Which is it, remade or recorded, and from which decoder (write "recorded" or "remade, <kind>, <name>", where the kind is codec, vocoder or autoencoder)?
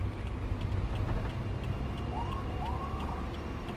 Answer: recorded